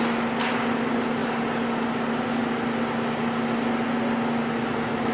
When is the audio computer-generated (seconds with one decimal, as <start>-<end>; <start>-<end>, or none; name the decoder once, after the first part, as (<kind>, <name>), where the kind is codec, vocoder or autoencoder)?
none